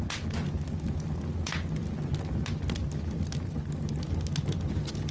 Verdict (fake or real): real